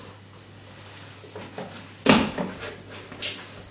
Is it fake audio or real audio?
real